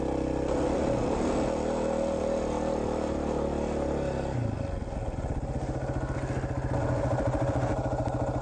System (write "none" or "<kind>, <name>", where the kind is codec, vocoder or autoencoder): none